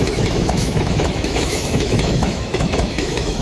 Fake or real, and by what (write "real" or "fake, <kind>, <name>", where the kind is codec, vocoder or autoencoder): fake, autoencoder, DAC-VAE